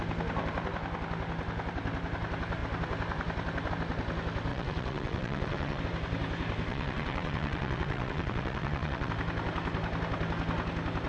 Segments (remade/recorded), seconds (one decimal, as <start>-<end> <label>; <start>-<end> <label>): 0.0-4.5 recorded; 4.5-5.8 remade; 5.8-6.7 recorded; 6.7-9.1 remade; 9.1-11.1 recorded